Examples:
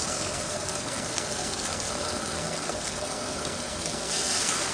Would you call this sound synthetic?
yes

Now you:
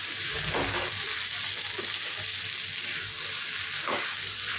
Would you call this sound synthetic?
no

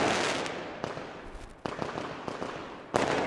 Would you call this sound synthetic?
no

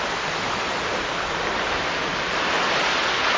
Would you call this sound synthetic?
no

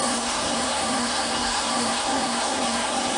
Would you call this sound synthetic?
yes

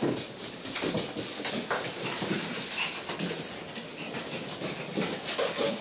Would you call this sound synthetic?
no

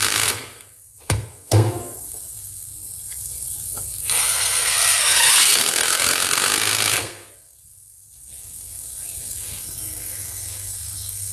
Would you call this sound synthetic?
yes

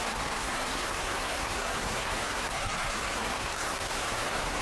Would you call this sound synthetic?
yes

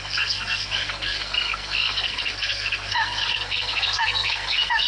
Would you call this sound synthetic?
yes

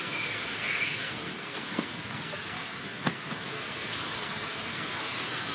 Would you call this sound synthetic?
yes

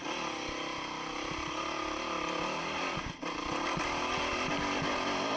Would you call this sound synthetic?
no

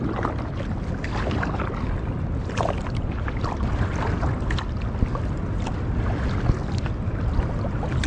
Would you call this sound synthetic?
no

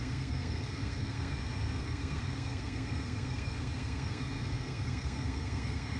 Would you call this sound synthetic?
yes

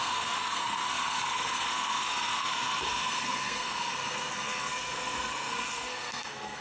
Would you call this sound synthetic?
yes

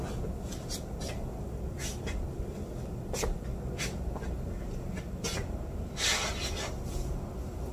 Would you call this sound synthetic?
no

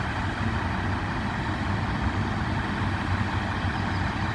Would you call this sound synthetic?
no